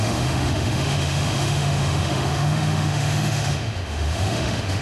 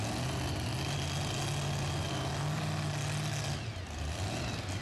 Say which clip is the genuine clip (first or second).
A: second